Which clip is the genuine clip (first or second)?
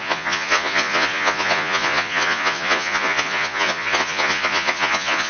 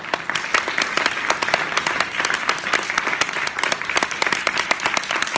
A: second